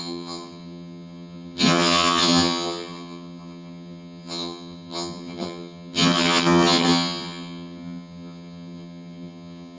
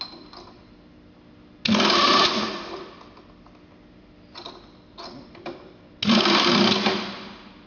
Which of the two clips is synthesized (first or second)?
first